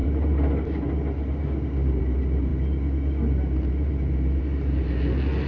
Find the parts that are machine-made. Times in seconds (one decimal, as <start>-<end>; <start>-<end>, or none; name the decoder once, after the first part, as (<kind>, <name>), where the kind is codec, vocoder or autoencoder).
none